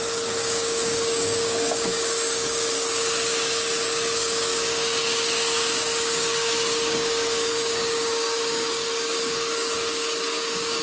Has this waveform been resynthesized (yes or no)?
yes